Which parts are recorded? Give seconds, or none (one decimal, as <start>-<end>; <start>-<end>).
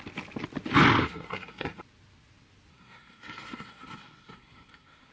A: 0.0-1.0; 1.8-2.7